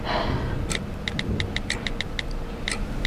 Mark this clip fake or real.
real